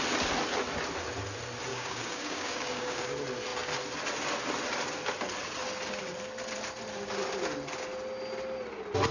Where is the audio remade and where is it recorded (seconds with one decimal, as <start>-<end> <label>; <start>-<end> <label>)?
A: 0.0-1.7 recorded; 1.7-3.1 remade; 3.1-9.1 recorded